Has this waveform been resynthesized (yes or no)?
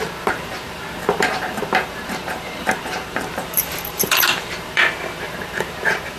yes